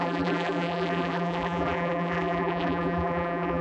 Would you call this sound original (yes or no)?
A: no